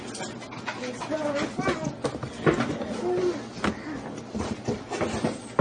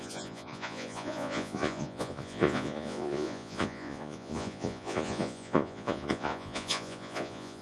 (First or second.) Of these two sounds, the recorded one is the first